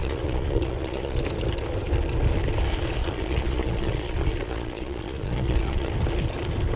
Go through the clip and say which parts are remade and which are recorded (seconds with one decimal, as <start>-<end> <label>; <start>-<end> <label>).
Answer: 0.0-1.2 remade; 1.2-3.0 recorded; 3.0-5.9 remade; 5.9-6.8 recorded